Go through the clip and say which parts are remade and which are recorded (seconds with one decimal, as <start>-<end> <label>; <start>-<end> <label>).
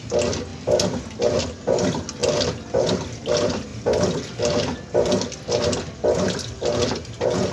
0.0-7.5 recorded